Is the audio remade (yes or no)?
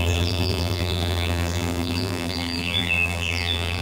yes